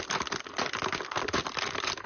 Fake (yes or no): no